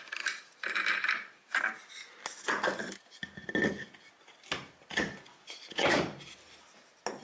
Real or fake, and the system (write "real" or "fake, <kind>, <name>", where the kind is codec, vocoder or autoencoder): real